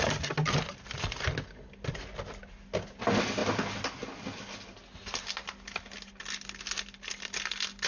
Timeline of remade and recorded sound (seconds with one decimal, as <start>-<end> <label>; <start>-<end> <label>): 0.0-7.9 recorded